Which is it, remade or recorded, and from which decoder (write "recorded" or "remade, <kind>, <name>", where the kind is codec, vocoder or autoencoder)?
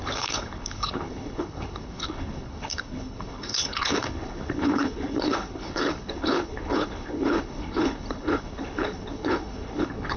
remade, codec, HILCodec